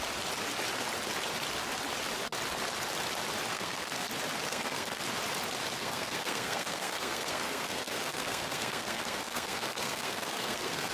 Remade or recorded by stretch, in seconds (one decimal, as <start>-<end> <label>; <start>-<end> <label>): 0.0-3.5 recorded; 3.5-4.1 remade; 4.1-4.5 recorded; 4.5-5.0 remade; 5.0-5.8 recorded; 5.8-10.9 remade